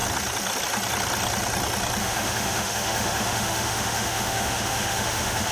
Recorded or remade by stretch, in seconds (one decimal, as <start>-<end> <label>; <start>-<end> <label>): 0.0-2.0 recorded; 2.0-5.5 remade